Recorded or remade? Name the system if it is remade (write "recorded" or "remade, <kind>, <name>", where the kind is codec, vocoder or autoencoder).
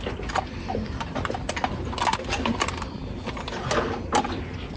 recorded